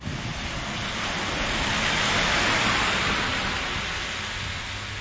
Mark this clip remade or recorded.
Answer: recorded